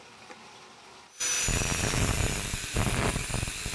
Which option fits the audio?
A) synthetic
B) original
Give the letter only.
B